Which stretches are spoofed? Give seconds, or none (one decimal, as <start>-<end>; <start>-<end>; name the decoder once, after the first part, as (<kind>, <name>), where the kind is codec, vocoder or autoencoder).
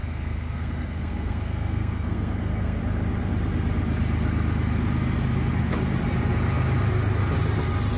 0.0-2.8 (codec, SNAC)